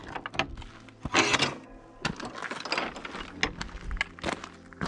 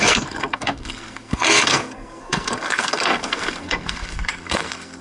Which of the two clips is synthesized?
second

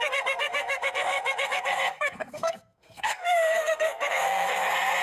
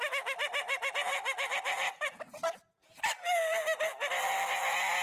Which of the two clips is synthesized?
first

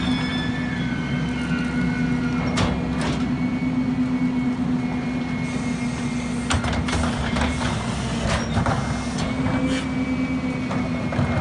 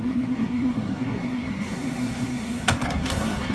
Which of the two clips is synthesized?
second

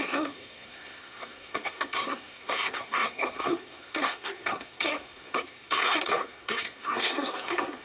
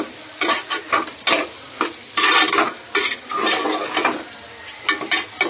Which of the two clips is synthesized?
first